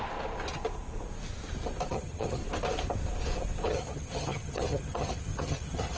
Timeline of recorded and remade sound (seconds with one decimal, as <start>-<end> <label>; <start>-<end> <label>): 0.0-1.9 recorded; 1.9-2.4 remade; 2.4-3.7 recorded; 3.7-6.0 remade